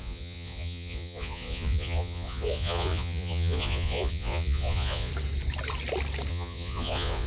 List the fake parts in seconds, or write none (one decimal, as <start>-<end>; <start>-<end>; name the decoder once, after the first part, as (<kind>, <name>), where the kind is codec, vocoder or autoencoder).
0.0-5.1 (vocoder, Vocos); 6.3-7.3